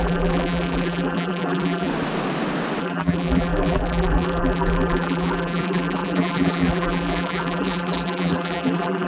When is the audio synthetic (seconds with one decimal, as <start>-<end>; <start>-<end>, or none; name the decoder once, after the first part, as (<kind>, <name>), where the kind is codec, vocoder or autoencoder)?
0.0-1.9 (vocoder, BigVGAN v2); 2.8-9.1

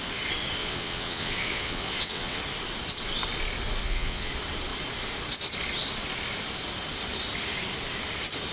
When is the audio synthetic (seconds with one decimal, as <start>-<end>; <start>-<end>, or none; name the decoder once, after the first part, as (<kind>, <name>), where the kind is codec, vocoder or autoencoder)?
0.6-2.4 (vocoder, WaveNeXt); 3.8-4.3

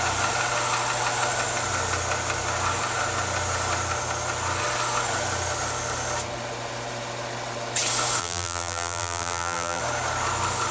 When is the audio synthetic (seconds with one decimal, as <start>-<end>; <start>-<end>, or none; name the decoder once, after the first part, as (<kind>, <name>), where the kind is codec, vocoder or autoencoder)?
8.2-9.8 (vocoder, BigVGAN v2)

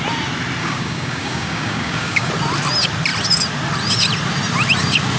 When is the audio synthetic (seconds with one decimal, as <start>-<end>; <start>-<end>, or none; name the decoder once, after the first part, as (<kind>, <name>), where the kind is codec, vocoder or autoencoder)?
0.6-2.3 (codec, DAC)

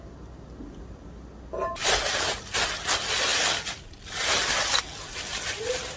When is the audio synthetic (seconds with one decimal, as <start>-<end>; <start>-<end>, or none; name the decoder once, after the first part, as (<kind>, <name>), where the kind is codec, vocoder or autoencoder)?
none

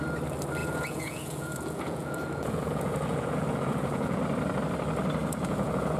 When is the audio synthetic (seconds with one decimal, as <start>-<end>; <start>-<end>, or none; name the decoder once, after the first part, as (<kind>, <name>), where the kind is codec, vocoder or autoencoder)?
0.6-4.2 (vocoder, Vocos); 5.2-6.0